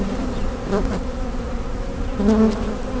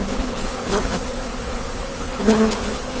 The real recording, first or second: first